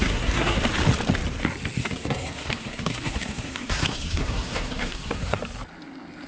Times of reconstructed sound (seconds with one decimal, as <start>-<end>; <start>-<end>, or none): 0.0-0.6; 1.8-5.4